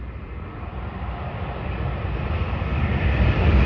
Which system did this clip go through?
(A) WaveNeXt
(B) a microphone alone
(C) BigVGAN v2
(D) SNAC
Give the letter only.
C